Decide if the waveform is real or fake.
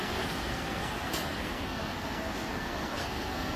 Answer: fake